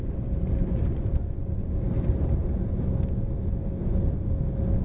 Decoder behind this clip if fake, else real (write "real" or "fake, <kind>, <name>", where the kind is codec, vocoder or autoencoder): real